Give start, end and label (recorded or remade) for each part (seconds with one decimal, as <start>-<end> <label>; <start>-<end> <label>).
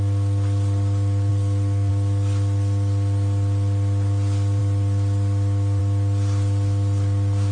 0.0-1.3 recorded; 1.3-1.9 remade; 1.9-7.5 recorded